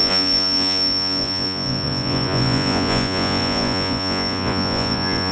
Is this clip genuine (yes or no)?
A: no